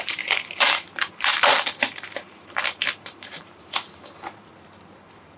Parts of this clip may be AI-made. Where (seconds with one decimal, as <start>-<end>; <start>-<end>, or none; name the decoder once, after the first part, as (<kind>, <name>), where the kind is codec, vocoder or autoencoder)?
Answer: 0.0-5.4 (vocoder, BigVGAN v2)